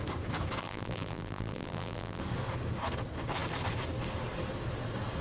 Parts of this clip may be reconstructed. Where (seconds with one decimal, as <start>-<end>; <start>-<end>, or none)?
0.6-2.2